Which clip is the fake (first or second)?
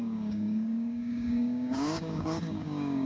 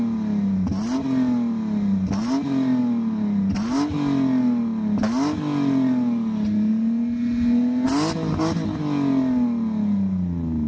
first